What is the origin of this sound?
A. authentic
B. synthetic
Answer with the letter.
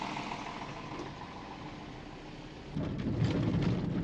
A